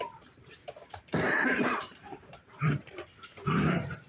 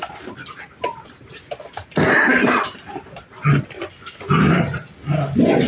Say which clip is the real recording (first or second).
second